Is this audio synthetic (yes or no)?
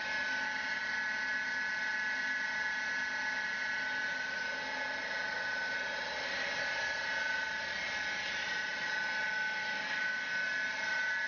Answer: no